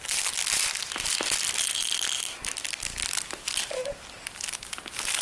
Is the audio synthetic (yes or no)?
no